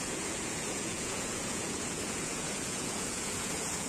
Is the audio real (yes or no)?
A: no